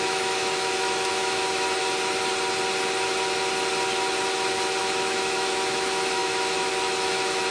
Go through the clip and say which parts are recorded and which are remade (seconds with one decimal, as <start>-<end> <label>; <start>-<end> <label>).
0.0-1.8 remade; 1.8-4.8 recorded; 4.8-7.5 remade